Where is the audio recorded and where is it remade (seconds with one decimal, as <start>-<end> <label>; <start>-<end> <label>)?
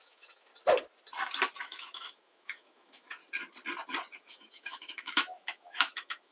0.0-0.5 remade; 0.5-1.6 recorded; 1.6-3.2 remade; 3.2-4.2 recorded; 4.2-6.3 remade